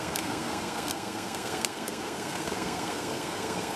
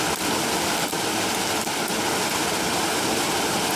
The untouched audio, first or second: second